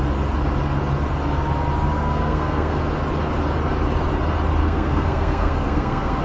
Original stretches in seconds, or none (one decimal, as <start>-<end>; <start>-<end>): 0.0-2.0; 2.8-4.6